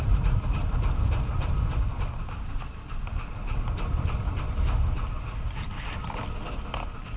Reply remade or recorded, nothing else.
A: recorded